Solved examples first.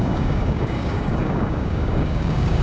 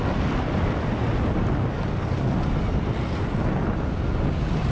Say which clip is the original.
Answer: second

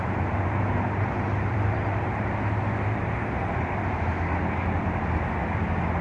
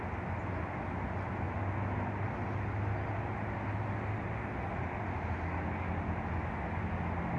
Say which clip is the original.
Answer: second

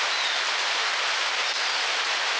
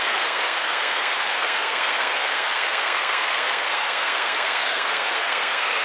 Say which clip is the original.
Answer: first